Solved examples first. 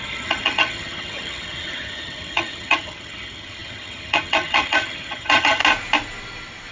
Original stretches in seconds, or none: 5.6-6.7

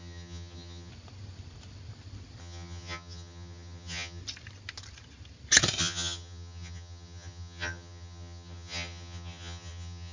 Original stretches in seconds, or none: 0.9-2.4; 4.2-5.8

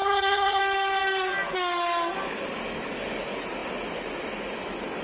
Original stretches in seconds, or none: 0.6-5.0